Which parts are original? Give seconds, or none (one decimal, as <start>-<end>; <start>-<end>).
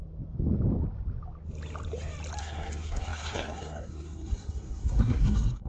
0.0-2.4